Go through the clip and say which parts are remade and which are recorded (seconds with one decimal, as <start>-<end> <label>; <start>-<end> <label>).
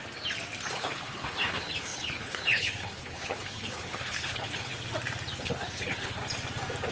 0.0-0.8 recorded; 0.8-4.7 remade; 4.7-5.4 recorded; 5.4-6.2 remade; 6.2-6.9 recorded